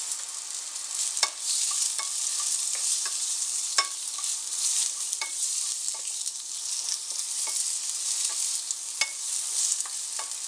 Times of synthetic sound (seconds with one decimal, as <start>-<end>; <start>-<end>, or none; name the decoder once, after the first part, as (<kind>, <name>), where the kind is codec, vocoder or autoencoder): 2.3-7.4 (vocoder, BigVGAN v2)